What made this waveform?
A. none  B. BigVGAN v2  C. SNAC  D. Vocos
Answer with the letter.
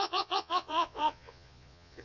D